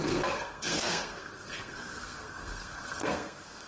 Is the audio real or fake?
fake